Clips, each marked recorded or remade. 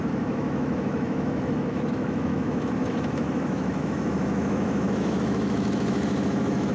remade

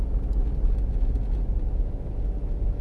recorded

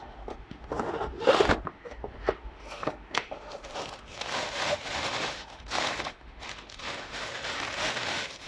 remade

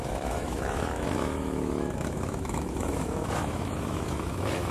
remade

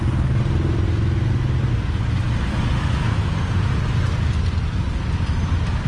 recorded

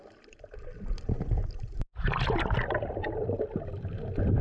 recorded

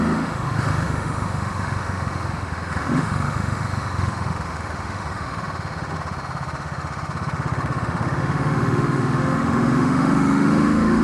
remade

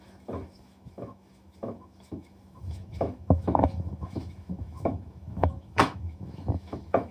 remade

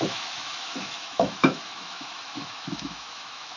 remade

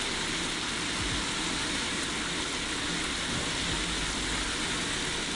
recorded